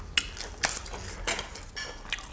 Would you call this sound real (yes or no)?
yes